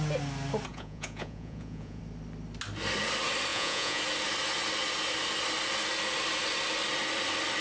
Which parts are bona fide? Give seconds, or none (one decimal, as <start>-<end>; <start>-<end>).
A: 0.0-0.7; 2.0-3.5; 4.0-7.6